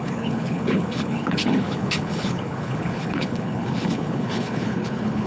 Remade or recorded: remade